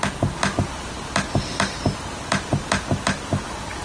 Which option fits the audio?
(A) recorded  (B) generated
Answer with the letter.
A